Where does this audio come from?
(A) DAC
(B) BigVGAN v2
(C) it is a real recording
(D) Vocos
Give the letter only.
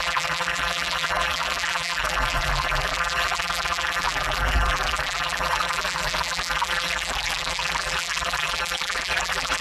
B